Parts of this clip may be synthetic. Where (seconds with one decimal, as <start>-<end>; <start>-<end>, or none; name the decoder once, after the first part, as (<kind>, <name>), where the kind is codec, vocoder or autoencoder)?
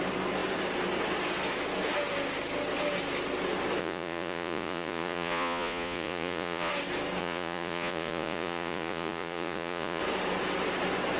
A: 3.8-6.7 (vocoder, Vocos); 7.2-10.0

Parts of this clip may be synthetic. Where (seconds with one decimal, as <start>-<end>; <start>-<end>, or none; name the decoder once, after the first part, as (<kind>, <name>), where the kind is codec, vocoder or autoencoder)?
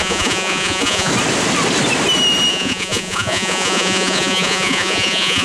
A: 0.0-1.1 (vocoder, Vocos); 2.5-5.4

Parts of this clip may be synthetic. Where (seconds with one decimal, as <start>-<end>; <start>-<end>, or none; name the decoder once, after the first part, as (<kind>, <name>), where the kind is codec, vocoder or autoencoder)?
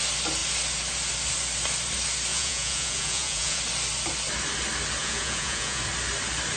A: 2.3-3.6 (vocoder, Vocos); 5.0-5.8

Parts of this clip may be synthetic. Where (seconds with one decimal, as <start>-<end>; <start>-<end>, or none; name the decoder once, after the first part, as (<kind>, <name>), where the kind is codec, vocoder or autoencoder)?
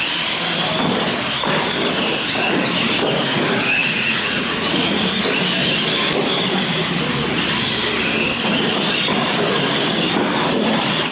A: 3.8-5.0 (vocoder, Vocos)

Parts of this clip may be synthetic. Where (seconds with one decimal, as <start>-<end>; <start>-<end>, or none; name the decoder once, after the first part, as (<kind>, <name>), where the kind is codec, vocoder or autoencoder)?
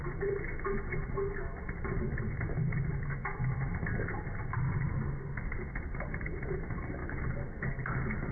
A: none